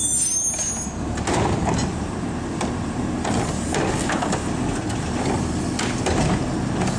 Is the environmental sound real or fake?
real